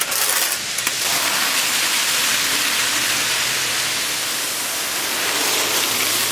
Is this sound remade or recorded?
recorded